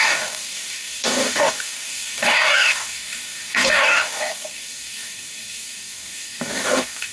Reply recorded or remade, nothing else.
remade